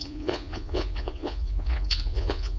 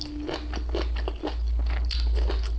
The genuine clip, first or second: second